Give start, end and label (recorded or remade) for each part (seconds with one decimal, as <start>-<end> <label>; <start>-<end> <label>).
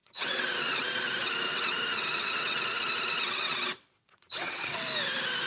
0.0-1.0 remade; 1.0-1.5 recorded; 1.5-4.8 remade; 4.8-5.5 recorded